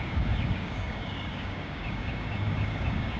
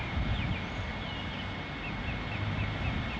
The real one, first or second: second